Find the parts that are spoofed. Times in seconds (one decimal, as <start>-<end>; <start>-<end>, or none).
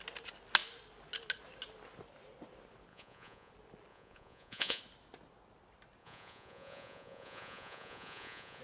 2.9-3.5; 3.9-4.8; 6.0-8.6